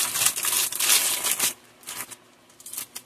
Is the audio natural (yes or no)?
yes